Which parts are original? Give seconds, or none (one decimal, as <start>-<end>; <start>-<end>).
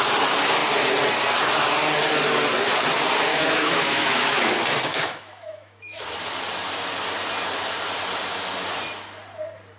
0.0-3.3; 4.4-4.9; 6.0-9.8